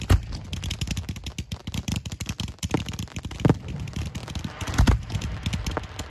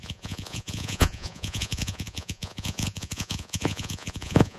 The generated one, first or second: second